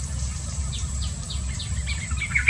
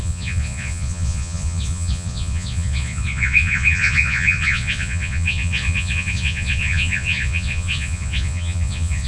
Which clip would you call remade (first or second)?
second